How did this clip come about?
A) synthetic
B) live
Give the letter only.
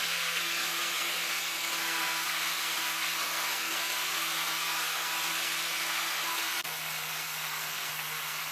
A